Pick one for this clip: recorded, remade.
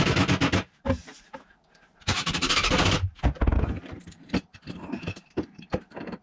remade